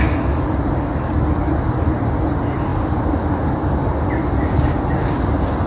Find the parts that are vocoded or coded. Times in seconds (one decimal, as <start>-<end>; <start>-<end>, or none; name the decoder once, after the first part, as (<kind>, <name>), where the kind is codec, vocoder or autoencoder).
none